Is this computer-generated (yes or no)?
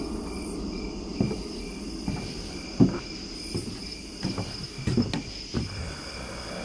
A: no